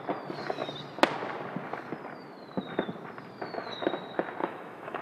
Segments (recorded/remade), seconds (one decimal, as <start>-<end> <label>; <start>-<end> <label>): 0.0-4.4 recorded; 4.4-5.0 remade